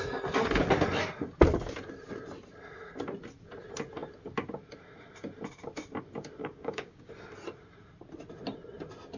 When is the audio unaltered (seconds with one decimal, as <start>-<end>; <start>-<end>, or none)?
0.0-6.4; 7.1-9.2